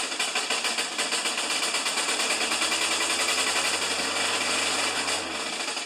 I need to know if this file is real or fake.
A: real